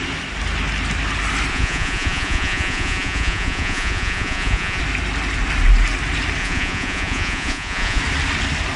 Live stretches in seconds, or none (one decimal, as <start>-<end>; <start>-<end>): 0.0-1.5; 4.8-6.4; 8.0-8.8